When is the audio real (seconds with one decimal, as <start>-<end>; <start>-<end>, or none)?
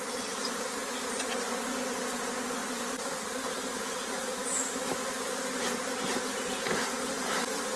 0.0-0.4; 2.0-2.6; 6.9-7.8